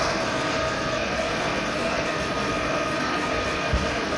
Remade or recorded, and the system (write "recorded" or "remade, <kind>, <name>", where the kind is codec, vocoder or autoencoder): remade, codec, SNAC